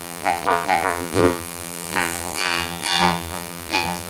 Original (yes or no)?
no